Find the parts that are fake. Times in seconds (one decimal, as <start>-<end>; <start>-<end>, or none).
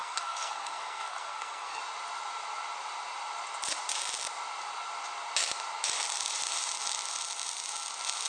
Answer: 0.0-1.8